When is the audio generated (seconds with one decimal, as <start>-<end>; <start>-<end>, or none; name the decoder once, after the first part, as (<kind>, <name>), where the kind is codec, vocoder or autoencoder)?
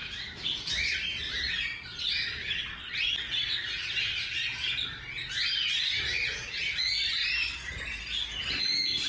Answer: 0.0-0.7 (vocoder, BigVGAN v2); 7.2-8.6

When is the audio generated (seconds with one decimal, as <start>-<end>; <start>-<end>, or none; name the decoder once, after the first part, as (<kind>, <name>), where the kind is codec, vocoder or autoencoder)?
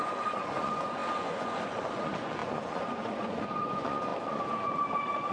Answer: 0.0-5.3 (vocoder, Vocos)